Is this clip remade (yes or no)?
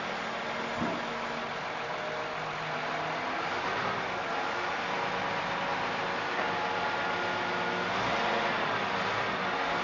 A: no